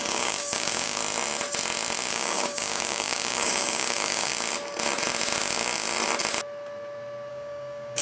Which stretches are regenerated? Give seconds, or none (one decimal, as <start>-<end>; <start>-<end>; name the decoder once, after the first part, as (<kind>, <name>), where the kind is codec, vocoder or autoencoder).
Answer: 0.0-1.0 (codec, DAC); 2.1-4.3; 7.3-8.0